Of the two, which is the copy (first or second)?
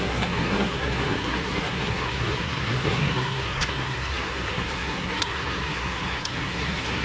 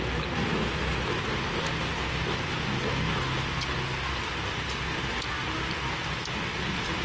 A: first